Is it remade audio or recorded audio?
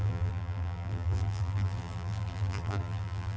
remade